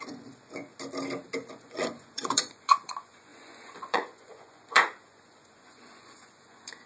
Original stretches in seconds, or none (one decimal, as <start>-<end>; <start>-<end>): 0.7-1.5